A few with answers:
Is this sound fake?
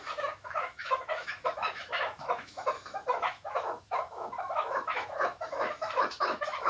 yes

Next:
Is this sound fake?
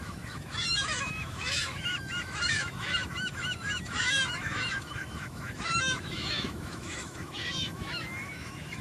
yes